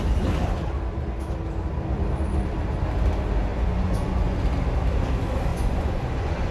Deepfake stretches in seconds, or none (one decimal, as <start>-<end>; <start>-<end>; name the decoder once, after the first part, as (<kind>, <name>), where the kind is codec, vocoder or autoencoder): 3.5-4.4 (vocoder, Vocos); 5.5-6.5